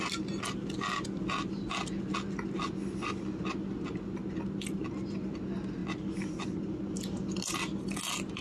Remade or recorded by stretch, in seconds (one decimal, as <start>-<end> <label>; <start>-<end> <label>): 0.0-8.4 recorded

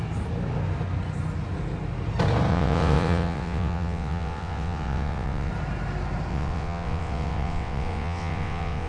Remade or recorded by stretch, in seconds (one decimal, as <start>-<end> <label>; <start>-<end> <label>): 0.0-2.5 recorded; 2.5-5.5 remade; 5.5-6.3 recorded; 6.3-8.9 remade

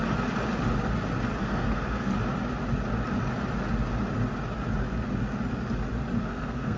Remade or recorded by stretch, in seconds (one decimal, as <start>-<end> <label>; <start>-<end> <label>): 0.0-1.4 recorded; 1.4-2.1 remade; 2.1-6.2 recorded; 6.2-6.8 remade

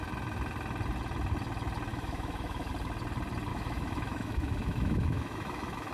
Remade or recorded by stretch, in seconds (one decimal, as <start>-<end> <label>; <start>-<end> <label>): 0.0-1.9 recorded; 1.9-2.7 remade; 2.7-3.5 recorded; 3.5-5.9 remade

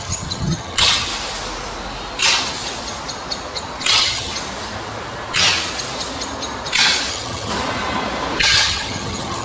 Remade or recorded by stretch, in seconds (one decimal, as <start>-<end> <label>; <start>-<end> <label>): 0.0-1.1 remade; 1.1-3.9 recorded; 3.9-4.3 remade; 4.3-7.1 recorded; 7.1-7.5 remade; 7.5-8.4 recorded; 8.4-9.4 remade